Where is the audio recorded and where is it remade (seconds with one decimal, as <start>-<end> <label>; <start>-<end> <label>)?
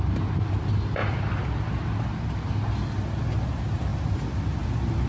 0.0-5.1 recorded